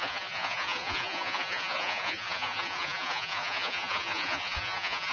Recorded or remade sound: remade